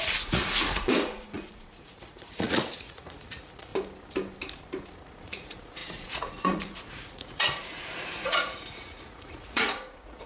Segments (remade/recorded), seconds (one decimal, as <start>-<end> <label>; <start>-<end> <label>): 0.0-3.7 remade; 3.7-5.0 recorded; 5.0-10.3 remade